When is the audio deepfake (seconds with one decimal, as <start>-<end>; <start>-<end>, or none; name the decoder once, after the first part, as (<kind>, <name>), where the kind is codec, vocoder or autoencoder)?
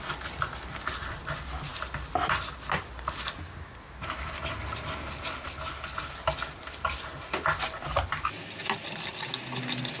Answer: none